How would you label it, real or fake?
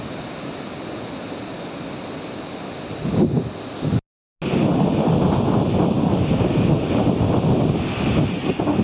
real